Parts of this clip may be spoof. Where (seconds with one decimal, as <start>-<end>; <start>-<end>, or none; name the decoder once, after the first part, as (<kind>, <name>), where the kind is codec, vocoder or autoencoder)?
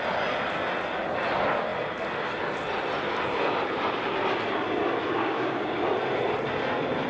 5.2-5.8 (codec, DAC)